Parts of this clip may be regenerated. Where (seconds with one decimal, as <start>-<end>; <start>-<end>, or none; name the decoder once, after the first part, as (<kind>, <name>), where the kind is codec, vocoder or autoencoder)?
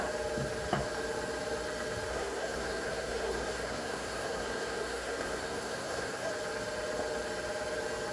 2.1-6.3 (codec, SNAC)